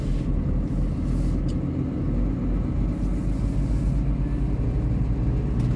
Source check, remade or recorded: recorded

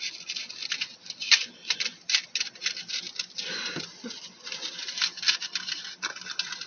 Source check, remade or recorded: recorded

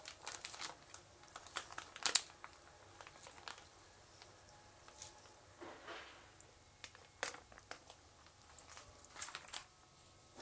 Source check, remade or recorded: recorded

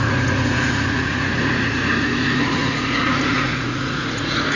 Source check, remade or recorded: remade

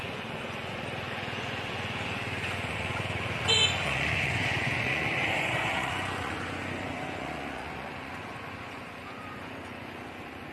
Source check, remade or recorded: remade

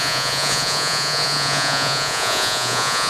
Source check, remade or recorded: remade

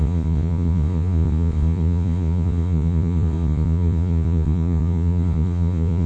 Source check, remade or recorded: remade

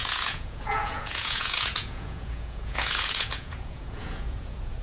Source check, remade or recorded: remade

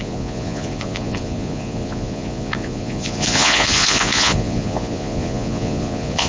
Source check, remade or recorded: remade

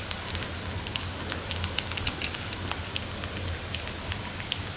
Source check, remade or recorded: recorded